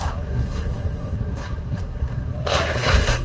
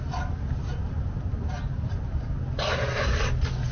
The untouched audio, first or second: second